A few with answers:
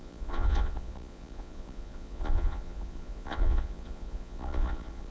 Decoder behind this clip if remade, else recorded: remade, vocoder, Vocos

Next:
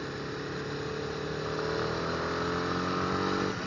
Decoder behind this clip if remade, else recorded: recorded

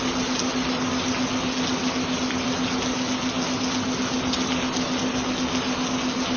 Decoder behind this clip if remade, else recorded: recorded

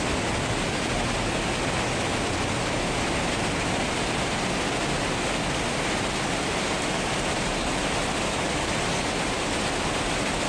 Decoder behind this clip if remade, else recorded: recorded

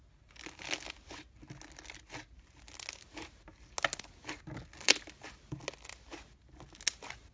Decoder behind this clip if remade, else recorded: recorded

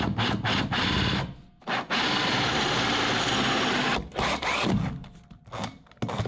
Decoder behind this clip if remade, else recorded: recorded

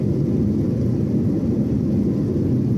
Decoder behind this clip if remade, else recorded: recorded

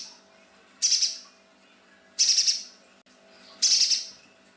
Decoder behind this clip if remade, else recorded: recorded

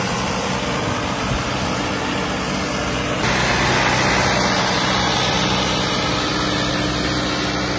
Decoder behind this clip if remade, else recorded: recorded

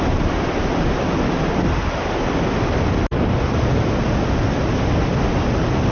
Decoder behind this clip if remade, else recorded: recorded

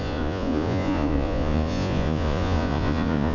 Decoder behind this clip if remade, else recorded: remade, vocoder, Vocos